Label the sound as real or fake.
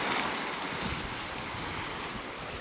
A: real